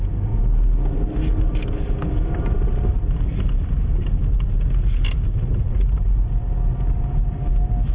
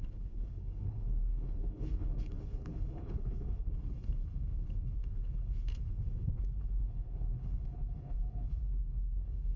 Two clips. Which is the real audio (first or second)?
first